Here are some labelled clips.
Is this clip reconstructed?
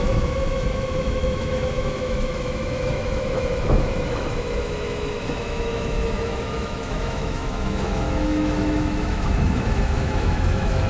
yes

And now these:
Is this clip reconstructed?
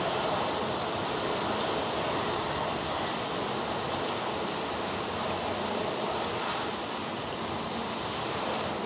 no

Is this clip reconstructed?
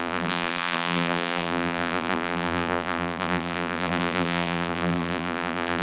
yes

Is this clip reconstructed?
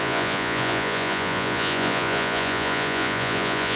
yes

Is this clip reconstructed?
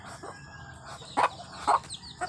no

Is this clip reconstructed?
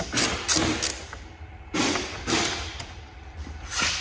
yes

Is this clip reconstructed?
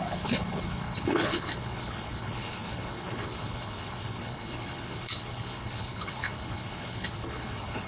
yes